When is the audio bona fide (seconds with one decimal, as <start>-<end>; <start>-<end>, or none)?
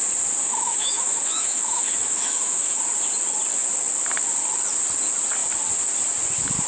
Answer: 0.0-0.4; 2.8-6.7